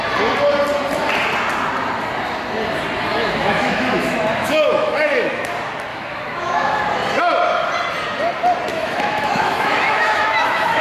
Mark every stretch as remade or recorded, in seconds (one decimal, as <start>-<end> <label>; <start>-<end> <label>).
0.0-3.1 recorded; 3.1-5.5 remade; 5.5-5.9 recorded; 5.9-6.8 remade; 6.8-8.7 recorded; 8.7-10.8 remade